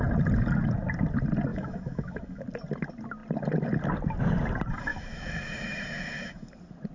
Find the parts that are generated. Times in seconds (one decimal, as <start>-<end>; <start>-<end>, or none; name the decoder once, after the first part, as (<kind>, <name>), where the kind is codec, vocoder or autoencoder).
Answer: 1.5-2.4 (autoencoder, DAC-VAE); 4.9-6.5